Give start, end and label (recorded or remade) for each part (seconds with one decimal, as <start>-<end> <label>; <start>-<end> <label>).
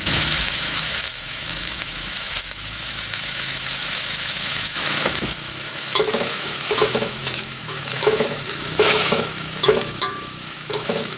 0.0-11.2 remade